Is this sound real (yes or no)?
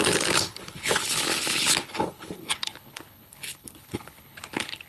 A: no